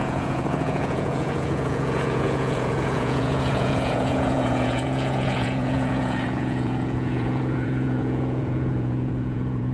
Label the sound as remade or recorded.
remade